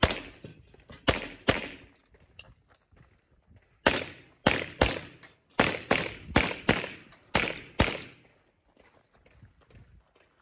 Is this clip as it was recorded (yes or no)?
yes